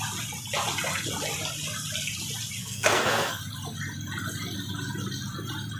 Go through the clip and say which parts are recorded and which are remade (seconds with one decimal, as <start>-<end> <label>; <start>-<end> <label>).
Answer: 0.0-2.6 recorded; 2.6-3.4 remade; 3.4-5.8 recorded